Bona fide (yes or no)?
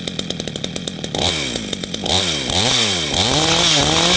yes